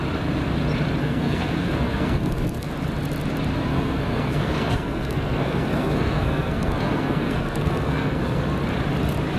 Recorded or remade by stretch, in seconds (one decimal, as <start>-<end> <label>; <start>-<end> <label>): 0.0-1.0 recorded; 1.0-2.7 remade; 2.7-3.7 recorded; 3.7-8.4 remade; 8.4-9.4 recorded